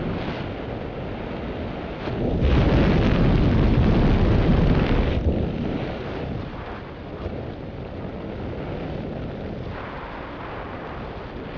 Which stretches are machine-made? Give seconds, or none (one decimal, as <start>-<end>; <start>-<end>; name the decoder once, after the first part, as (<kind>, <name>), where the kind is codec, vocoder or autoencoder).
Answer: 4.5-7.3 (vocoder, BigVGAN v2)